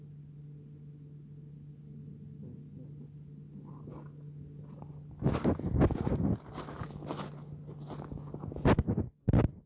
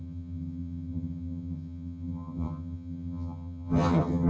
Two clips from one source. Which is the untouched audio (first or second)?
first